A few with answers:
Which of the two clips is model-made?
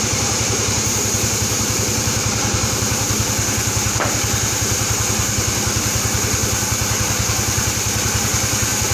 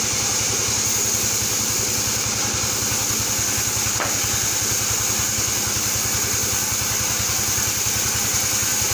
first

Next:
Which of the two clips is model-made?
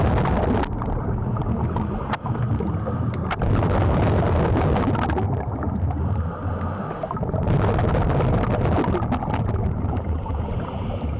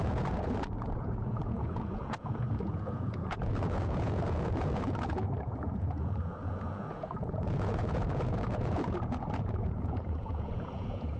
second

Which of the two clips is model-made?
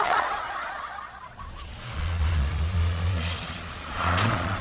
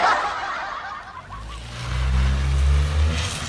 first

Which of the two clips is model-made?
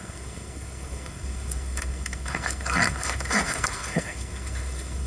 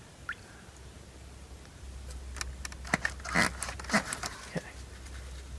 first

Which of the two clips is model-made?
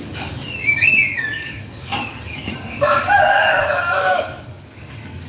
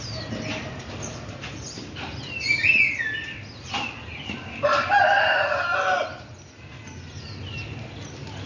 first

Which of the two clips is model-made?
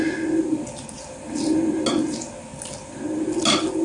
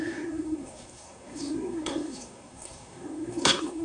second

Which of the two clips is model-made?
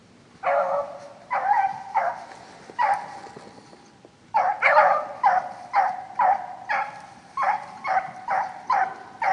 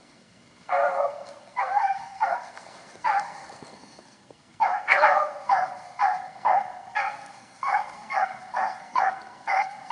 second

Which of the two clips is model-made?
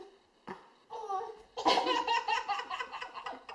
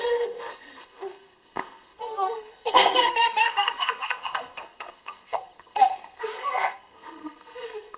second